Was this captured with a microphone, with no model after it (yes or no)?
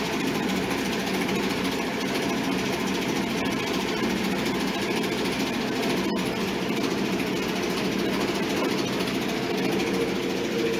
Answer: yes